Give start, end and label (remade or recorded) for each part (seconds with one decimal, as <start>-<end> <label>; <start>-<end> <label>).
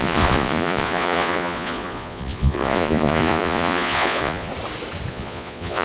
0.0-4.5 remade; 4.5-5.1 recorded; 5.1-5.8 remade